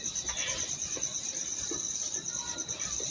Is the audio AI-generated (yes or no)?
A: no